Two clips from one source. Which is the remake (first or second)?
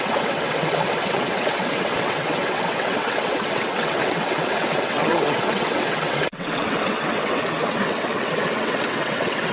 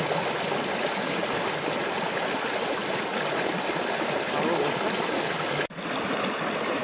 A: first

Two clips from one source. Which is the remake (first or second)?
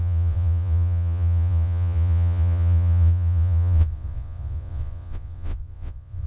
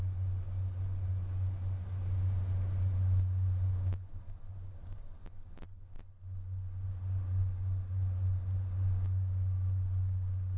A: first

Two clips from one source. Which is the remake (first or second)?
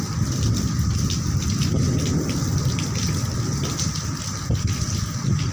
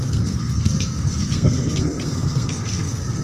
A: second